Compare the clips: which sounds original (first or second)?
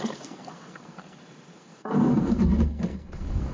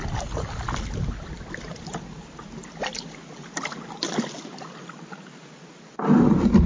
second